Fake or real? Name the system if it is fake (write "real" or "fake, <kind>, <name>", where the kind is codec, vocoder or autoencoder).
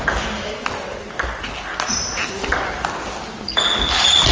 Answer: real